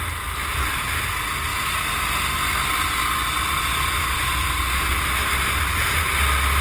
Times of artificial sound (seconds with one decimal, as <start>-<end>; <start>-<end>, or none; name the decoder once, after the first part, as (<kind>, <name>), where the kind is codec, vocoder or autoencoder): none

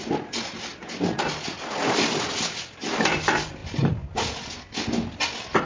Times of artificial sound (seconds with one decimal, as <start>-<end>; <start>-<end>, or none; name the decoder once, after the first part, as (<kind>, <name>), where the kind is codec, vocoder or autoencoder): none

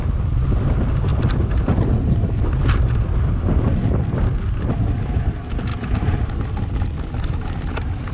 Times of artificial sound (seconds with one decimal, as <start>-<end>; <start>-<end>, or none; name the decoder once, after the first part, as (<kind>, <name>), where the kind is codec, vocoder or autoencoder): none

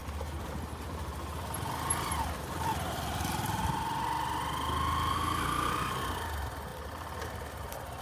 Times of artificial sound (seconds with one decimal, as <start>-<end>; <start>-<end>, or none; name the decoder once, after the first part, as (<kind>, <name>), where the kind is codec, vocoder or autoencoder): 5.1-5.7 (codec, SNAC)

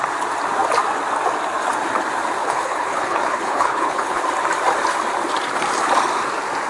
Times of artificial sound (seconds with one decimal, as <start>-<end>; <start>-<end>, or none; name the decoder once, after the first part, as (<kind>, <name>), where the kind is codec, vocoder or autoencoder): 2.4-4.2 (codec, HILCodec)

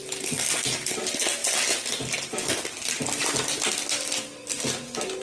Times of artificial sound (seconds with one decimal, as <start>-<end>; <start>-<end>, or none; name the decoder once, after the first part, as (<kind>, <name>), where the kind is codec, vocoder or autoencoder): none